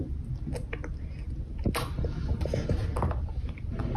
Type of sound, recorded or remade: recorded